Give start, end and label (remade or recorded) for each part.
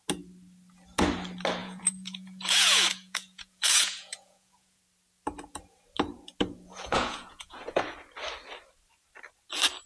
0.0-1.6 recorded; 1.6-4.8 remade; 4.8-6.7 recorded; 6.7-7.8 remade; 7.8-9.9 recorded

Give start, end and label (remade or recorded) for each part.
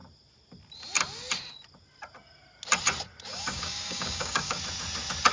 0.0-3.3 recorded; 3.3-4.6 remade; 4.6-5.3 recorded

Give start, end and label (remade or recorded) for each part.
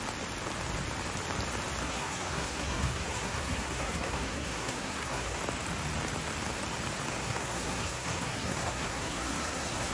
0.0-1.8 recorded; 1.8-5.4 remade; 5.4-7.2 recorded; 7.2-9.9 remade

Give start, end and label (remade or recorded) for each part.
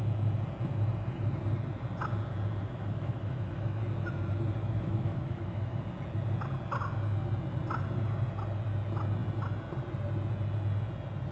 0.0-2.6 recorded; 2.6-3.8 remade; 3.8-4.6 recorded; 4.6-5.8 remade; 5.8-11.3 recorded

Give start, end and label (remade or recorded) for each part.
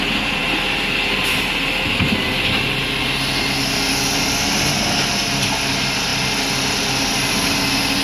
0.0-8.0 recorded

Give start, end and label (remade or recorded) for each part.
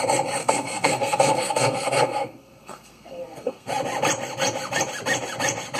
0.0-0.4 recorded; 0.4-3.7 remade; 3.7-5.8 recorded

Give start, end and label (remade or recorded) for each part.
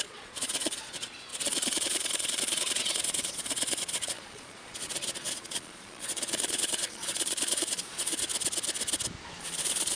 0.0-8.3 remade; 8.3-9.4 recorded; 9.4-10.0 remade